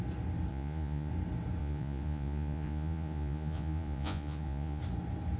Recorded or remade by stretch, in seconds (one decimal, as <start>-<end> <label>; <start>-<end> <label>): 0.0-0.5 recorded; 0.5-1.1 remade; 1.1-1.6 recorded; 1.6-4.8 remade; 4.8-5.4 recorded